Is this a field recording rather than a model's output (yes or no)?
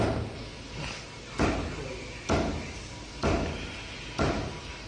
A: yes